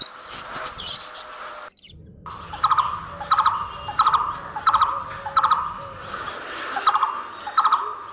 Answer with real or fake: real